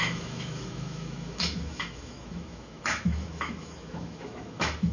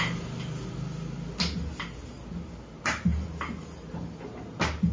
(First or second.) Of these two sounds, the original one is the second